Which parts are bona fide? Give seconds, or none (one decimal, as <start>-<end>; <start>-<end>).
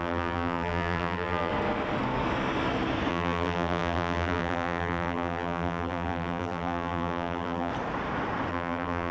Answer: 1.5-3.1; 7.7-8.5